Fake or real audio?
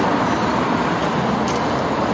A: real